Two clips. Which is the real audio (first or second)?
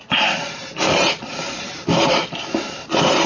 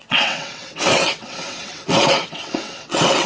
first